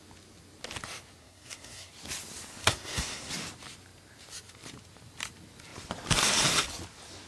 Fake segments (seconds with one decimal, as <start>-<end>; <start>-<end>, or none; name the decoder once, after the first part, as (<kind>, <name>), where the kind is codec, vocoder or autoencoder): 1.2-1.9 (codec, SNAC); 2.6-3.3

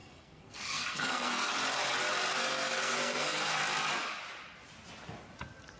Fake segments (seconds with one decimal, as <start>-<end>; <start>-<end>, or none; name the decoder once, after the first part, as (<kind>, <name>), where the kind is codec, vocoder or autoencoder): 0.0-1.5 (codec, SNAC); 2.3-3.6

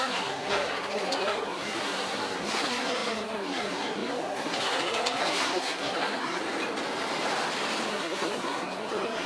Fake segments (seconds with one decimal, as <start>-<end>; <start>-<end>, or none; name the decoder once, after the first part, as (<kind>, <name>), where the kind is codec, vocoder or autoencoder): 0.0-6.4 (codec, SNAC); 7.9-9.3

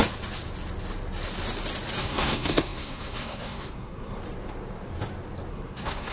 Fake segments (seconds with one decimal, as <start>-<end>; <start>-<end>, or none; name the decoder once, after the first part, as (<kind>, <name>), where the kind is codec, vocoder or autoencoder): 2.0-4.2 (codec, SNAC); 5.5-6.1

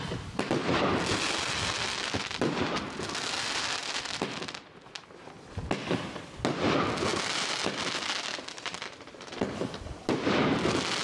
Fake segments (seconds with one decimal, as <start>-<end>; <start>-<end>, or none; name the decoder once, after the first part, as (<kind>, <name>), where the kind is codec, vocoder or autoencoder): none

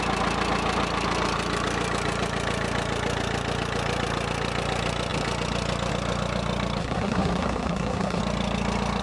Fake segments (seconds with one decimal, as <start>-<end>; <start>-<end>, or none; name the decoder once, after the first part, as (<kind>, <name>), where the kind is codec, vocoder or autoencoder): 6.8-8.2 (codec, SNAC)